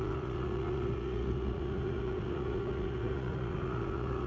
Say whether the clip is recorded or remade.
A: remade